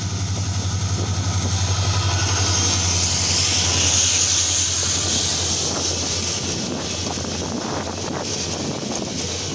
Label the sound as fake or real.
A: real